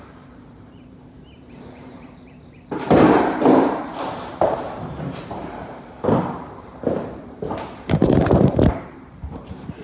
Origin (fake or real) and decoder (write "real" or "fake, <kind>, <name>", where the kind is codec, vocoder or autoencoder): fake, vocoder, BigVGAN v2